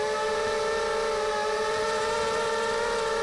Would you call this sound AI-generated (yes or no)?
no